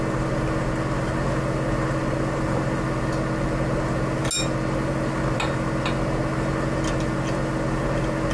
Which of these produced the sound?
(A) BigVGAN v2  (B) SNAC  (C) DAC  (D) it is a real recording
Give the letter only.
D